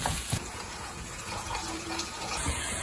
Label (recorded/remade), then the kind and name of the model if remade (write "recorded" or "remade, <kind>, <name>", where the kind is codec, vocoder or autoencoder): remade, vocoder, Vocos